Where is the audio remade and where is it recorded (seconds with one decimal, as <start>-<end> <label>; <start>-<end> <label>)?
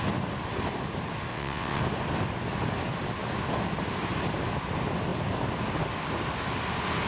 0.0-1.3 recorded; 1.3-1.8 remade; 1.8-7.1 recorded